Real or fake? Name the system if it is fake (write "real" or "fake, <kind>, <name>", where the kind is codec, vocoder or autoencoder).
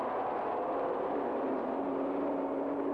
real